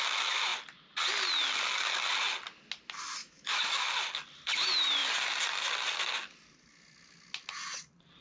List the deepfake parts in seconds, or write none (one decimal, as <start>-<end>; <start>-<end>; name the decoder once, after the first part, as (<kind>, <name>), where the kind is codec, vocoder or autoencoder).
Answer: 3.2-3.9 (autoencoder, DAC-VAE)